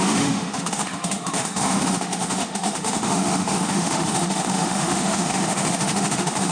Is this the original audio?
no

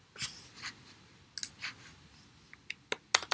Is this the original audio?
yes